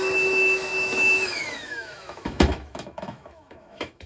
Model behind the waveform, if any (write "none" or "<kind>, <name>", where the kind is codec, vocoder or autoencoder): autoencoder, DAC-VAE